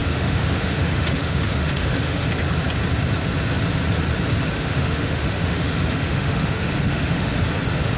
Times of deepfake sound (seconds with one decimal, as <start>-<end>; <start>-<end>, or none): 0.0-2.3; 4.5-7.3